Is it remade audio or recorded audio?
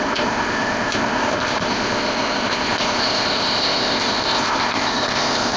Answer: remade